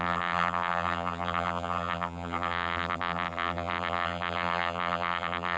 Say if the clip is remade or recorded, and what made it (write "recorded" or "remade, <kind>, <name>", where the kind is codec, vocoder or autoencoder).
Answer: remade, vocoder, BigVGAN v2